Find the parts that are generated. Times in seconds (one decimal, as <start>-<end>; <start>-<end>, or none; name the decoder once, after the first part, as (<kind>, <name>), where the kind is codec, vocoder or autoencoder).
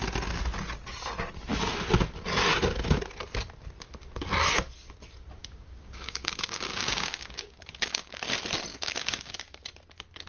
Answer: 5.4-8.2 (codec, DAC); 8.7-9.4